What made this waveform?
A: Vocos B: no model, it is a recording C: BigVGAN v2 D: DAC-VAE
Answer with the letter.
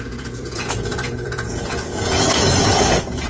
A